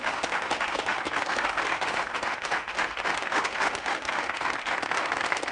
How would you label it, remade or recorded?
remade